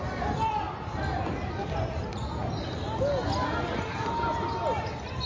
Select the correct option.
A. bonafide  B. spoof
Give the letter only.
A